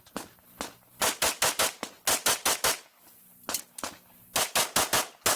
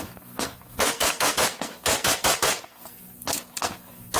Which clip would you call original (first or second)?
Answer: first